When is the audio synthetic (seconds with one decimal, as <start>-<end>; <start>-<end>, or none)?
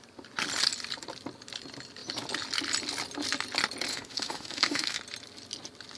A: 3.9-5.0